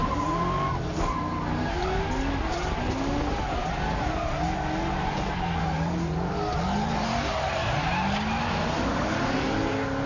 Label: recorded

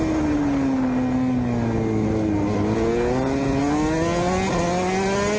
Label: recorded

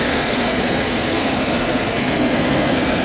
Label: remade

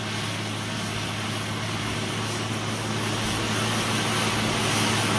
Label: recorded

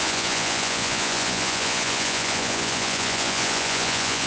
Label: remade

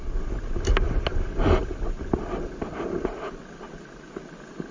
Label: recorded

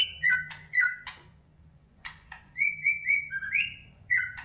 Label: remade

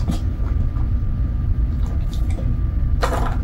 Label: recorded